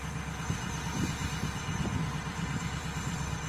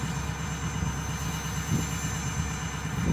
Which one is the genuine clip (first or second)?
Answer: second